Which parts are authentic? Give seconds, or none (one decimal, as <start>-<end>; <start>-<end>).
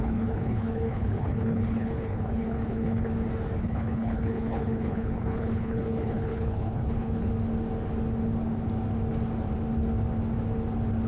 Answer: 3.1-3.6; 7.3-11.1